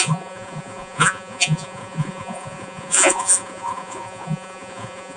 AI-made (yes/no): yes